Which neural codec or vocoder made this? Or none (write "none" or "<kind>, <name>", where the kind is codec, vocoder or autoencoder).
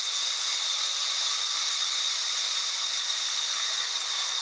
none